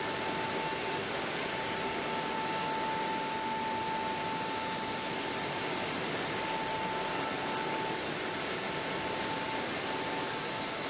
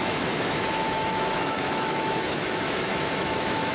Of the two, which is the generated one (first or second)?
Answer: second